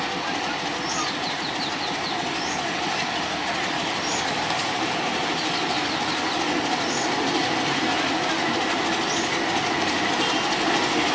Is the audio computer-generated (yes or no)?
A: no